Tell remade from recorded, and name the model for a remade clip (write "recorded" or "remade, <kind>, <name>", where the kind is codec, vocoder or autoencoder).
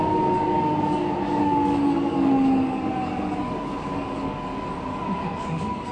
remade, codec, DAC